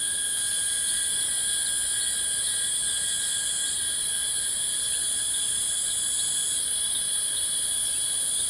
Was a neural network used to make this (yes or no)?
no